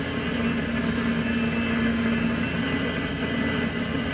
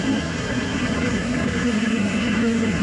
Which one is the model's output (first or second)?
second